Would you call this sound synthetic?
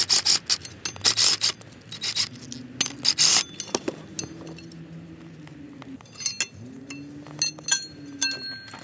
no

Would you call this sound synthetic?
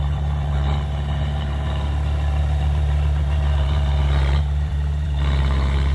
yes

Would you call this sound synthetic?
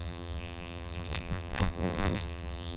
yes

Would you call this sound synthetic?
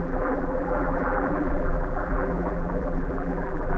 yes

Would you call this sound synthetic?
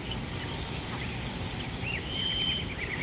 yes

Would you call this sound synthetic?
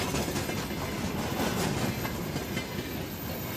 no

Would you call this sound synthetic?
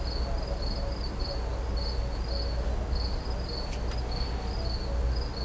no